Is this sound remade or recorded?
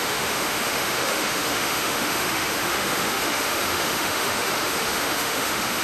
remade